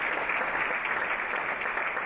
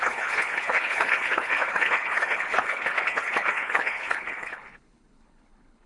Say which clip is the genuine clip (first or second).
first